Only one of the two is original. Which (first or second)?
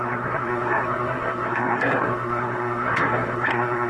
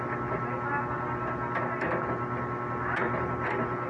second